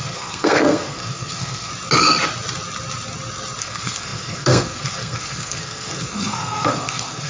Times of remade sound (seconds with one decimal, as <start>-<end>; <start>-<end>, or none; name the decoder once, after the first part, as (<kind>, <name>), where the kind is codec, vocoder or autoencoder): 0.0-1.7 (codec, SNAC); 3.6-7.3